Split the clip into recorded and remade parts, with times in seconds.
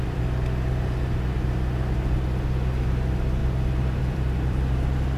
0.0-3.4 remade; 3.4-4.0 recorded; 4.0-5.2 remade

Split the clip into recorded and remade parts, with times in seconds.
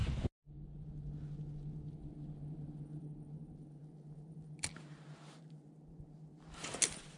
0.0-7.2 recorded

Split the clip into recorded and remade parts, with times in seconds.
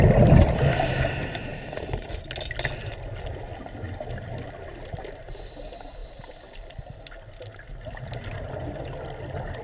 0.0-9.6 recorded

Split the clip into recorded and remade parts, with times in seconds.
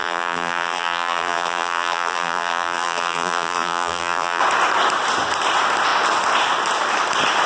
0.0-4.4 remade; 4.4-7.5 recorded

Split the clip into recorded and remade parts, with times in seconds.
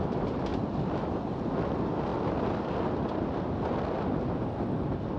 0.0-0.5 recorded; 0.5-1.4 remade; 1.4-2.1 recorded; 2.1-2.7 remade; 2.7-5.2 recorded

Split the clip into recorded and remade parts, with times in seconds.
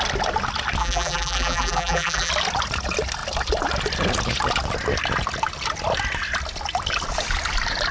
0.0-0.8 recorded; 0.8-2.3 remade; 2.3-7.9 recorded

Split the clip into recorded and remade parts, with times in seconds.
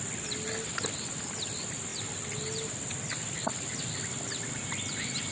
0.0-5.3 recorded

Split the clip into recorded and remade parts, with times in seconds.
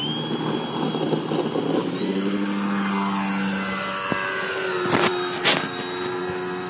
0.0-6.7 recorded